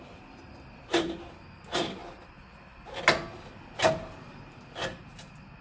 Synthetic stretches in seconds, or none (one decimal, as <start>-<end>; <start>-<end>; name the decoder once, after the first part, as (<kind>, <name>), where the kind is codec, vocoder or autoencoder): none